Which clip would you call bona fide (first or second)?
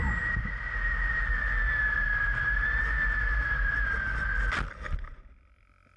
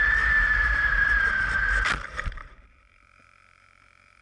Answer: first